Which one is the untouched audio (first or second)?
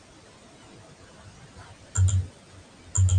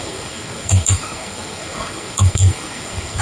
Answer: first